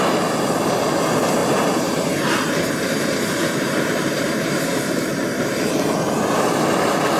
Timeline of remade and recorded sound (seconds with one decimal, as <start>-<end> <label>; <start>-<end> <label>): 0.0-1.4 recorded; 1.4-5.7 remade; 5.7-7.2 recorded